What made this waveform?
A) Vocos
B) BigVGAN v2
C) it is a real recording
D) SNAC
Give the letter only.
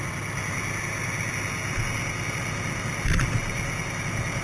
C